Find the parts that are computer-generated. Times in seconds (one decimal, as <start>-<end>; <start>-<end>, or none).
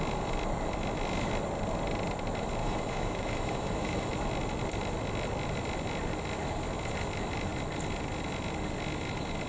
2.6-4.1